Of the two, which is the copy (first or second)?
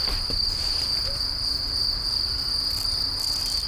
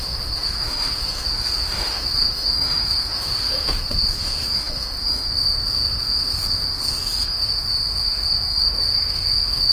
second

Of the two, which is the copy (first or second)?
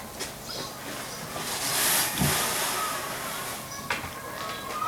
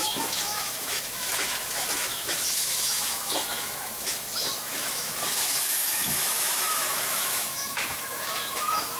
second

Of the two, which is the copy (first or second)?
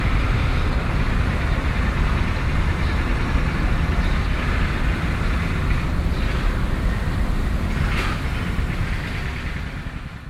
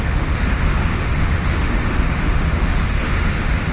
second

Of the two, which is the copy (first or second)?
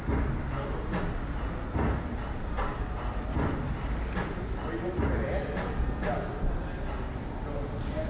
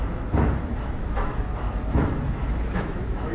second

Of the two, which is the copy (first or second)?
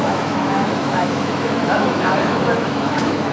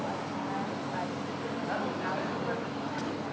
first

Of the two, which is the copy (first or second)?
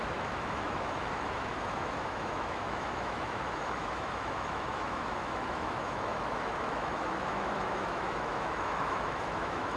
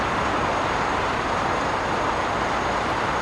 first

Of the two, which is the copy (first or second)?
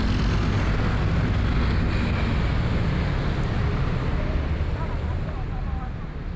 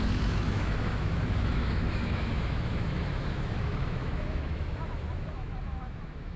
second